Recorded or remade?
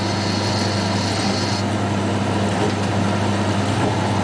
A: recorded